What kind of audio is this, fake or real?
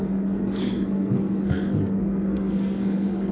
fake